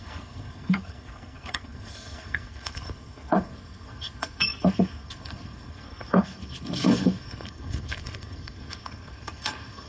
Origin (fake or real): fake